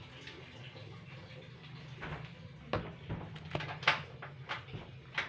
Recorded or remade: recorded